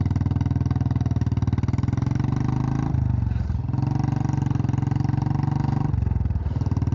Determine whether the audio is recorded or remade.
recorded